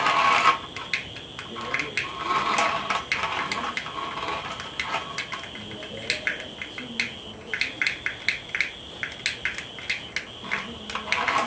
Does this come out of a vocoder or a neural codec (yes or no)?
no